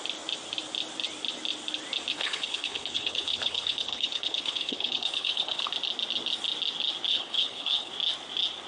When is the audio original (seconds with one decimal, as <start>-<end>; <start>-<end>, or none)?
0.0-2.1; 5.6-7.1; 7.9-8.7